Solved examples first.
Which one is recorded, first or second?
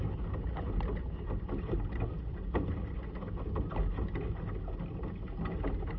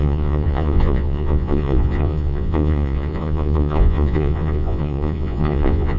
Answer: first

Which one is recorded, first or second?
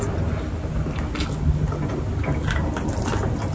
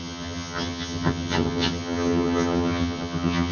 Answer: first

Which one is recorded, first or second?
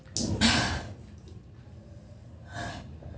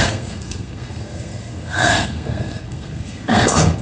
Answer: first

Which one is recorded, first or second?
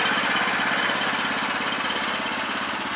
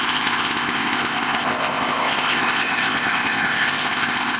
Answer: first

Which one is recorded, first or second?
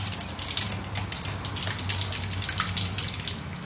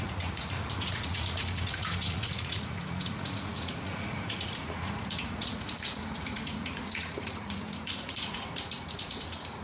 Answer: first